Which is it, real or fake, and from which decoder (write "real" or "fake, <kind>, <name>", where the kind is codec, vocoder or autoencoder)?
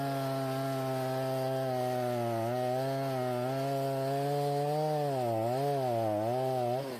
real